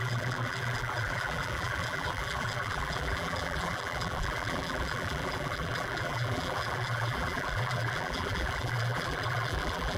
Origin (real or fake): fake